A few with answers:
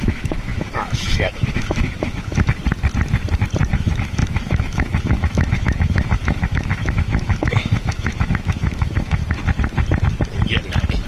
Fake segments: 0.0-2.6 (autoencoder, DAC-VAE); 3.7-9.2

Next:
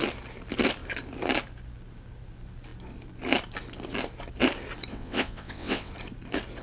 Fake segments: 4.9-5.9 (vocoder, WaveNeXt)

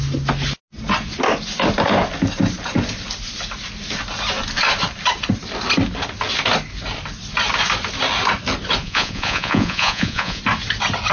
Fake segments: 8.8-10.4 (vocoder, Vocos)

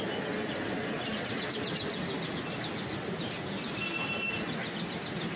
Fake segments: none

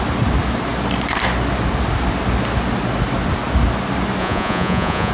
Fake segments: 4.2-5.1 (vocoder, Vocos)